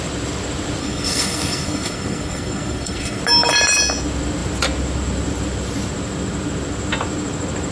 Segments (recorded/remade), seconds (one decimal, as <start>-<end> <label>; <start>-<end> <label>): 0.0-0.8 recorded; 0.8-3.2 remade; 3.2-7.7 recorded